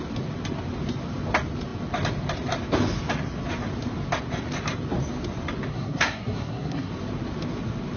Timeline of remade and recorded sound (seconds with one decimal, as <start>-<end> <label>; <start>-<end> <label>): 0.0-5.7 recorded; 5.7-6.9 remade; 6.9-8.0 recorded